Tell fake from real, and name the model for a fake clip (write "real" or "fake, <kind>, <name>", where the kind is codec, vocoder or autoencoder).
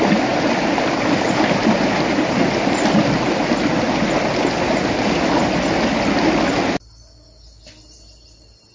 real